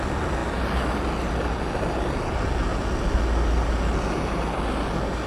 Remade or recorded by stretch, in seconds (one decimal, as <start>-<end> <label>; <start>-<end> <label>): 0.0-5.3 recorded